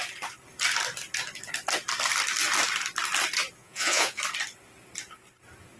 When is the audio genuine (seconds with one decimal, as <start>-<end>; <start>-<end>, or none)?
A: 0.0-3.6; 4.2-5.8